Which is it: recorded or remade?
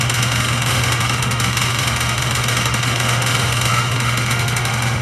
remade